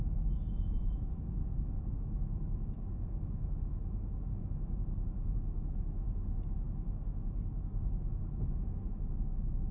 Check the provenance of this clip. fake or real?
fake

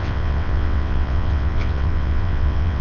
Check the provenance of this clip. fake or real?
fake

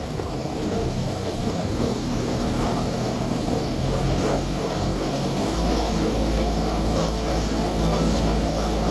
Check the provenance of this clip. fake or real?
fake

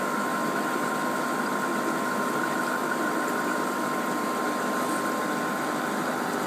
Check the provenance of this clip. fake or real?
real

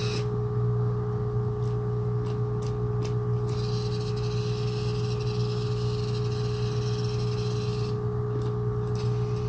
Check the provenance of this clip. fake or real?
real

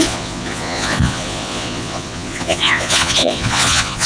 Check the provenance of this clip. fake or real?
fake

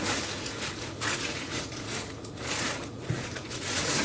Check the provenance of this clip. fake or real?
fake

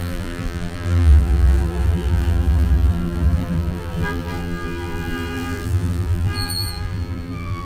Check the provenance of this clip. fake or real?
fake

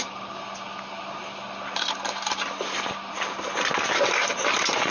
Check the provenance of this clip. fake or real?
real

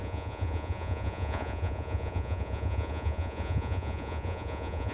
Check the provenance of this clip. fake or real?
fake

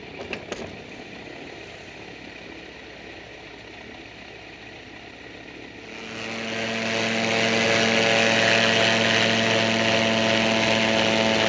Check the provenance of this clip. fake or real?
real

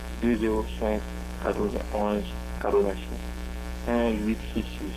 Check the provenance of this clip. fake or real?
fake